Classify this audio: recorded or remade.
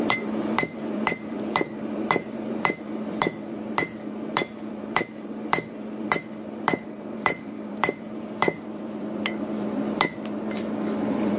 remade